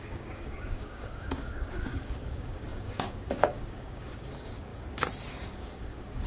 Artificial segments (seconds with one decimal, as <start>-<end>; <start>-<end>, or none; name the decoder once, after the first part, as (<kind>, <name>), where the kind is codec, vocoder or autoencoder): 0.0-4.7 (codec, DAC); 5.3-6.3